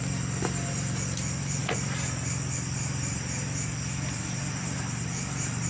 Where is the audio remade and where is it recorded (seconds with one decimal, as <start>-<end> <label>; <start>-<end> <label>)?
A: 0.0-1.6 remade; 1.6-4.5 recorded; 4.5-5.7 remade